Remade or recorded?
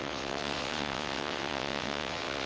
remade